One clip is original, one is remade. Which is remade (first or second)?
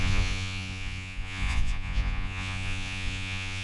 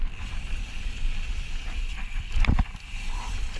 first